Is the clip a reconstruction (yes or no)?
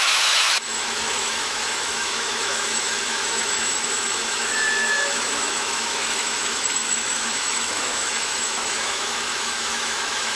yes